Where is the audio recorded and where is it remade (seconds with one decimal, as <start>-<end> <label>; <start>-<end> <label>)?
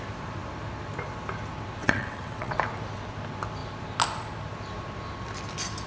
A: 0.0-1.8 recorded; 1.8-2.5 remade; 2.5-5.9 recorded